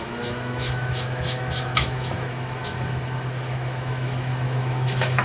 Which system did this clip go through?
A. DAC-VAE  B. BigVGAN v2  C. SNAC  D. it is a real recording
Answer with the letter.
A